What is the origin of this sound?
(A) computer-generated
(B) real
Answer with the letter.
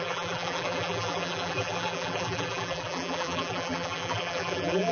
A